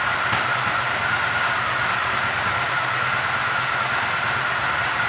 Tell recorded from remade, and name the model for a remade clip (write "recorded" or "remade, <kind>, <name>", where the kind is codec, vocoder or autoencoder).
recorded